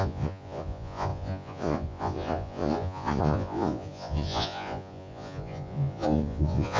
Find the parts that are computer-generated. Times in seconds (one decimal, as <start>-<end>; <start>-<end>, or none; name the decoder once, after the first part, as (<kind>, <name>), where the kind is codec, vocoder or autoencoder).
0.0-6.8 (vocoder, Vocos)